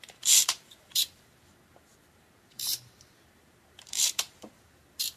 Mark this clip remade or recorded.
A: remade